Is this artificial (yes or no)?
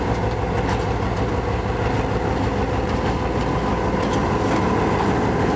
no